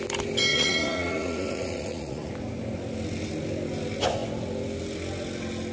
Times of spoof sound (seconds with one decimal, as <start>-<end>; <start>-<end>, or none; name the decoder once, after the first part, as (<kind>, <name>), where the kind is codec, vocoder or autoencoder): 0.5-2.3 (vocoder, Vocos)